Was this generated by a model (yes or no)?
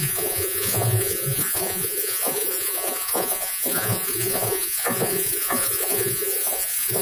yes